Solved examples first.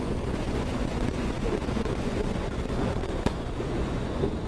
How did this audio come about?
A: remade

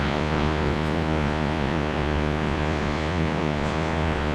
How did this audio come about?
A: remade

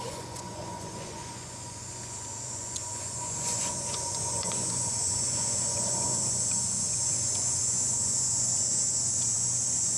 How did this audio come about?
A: remade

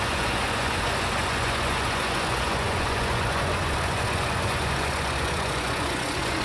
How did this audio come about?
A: remade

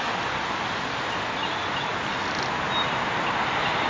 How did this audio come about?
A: recorded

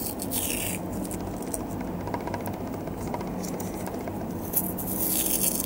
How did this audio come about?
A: recorded